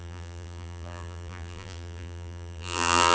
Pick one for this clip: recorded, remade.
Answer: remade